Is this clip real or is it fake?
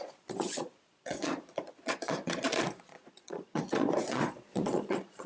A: fake